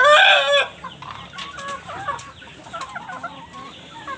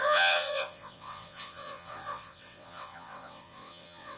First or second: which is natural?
first